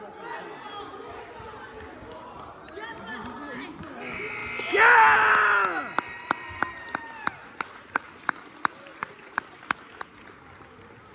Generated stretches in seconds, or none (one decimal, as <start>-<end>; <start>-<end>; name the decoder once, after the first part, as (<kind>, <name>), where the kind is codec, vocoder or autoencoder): 7.4-8.1 (vocoder, Vocos); 8.9-9.6